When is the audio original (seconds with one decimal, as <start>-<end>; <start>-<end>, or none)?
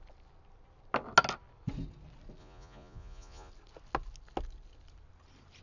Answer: 0.0-2.4; 3.5-5.6